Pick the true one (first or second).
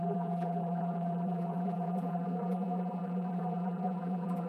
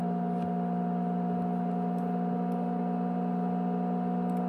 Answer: second